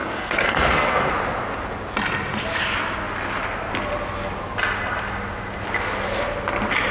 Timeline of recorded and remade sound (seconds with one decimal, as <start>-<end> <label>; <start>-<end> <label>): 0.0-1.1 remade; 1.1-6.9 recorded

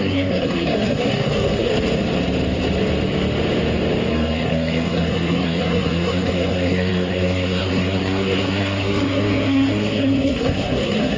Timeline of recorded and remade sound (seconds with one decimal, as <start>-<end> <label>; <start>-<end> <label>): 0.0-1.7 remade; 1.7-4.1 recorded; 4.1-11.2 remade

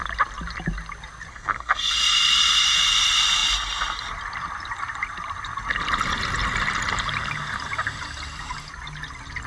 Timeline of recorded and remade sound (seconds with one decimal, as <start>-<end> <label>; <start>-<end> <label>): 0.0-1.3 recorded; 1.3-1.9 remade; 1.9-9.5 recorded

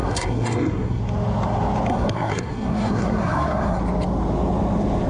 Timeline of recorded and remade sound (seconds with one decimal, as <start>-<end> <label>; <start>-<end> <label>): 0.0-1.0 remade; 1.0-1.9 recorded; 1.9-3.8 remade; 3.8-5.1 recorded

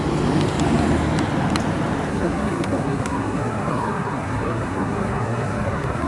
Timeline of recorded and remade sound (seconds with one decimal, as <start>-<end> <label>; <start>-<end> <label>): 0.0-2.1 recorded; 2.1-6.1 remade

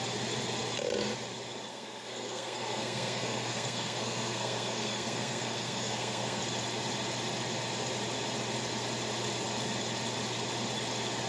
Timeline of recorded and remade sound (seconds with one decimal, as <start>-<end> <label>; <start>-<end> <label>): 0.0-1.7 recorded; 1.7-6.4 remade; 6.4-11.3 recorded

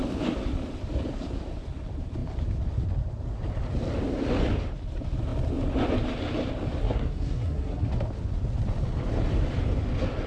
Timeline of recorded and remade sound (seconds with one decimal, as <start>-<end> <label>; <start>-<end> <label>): 0.0-6.8 recorded; 6.8-7.9 remade; 7.9-10.3 recorded